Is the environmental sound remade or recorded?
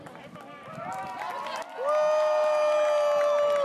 recorded